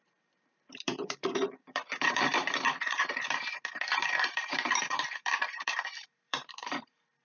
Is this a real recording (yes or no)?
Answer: no